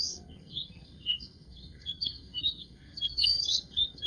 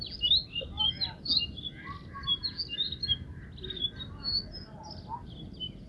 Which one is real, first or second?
second